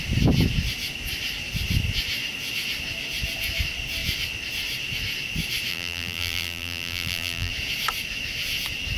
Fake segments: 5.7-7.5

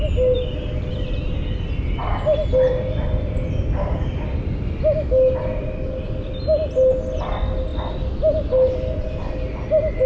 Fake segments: none